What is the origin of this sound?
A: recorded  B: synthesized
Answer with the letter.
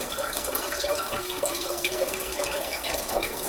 B